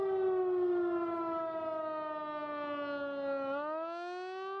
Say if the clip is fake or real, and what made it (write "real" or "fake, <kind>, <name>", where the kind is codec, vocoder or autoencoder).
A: real